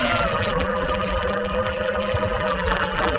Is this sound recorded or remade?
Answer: remade